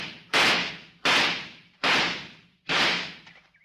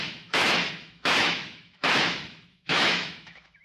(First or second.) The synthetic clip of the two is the second